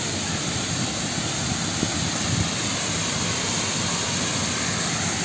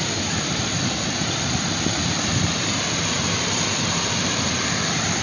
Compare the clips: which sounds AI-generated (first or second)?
second